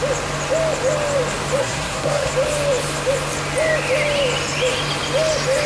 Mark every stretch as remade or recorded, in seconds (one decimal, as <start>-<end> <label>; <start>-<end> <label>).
0.0-1.6 recorded; 1.6-2.3 remade; 2.3-5.7 recorded